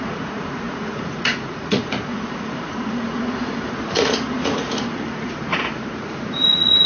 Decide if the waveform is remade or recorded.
remade